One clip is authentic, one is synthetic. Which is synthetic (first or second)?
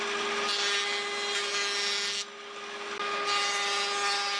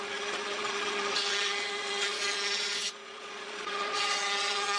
second